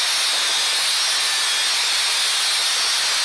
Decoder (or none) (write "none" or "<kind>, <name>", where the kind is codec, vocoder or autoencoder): none